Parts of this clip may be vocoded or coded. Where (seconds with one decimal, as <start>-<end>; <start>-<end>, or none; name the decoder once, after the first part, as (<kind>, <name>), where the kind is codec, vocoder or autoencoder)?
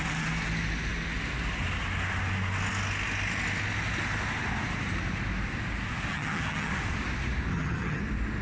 6.1-6.7 (vocoder, HiFi-GAN); 7.5-8.0